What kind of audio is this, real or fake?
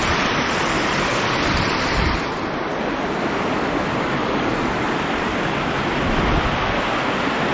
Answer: real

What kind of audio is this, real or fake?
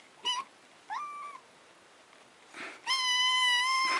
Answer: real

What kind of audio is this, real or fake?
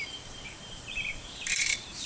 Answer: fake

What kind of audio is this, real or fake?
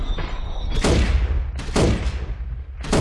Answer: real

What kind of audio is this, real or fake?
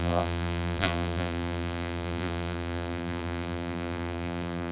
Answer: fake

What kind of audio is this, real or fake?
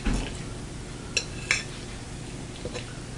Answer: real